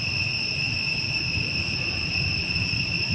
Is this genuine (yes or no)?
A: no